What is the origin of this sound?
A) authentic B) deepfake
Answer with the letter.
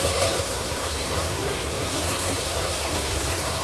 B